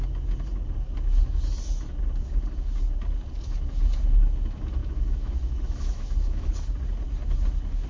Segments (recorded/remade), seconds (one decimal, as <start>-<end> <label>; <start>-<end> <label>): 0.0-4.8 recorded; 4.8-6.5 remade; 6.5-7.9 recorded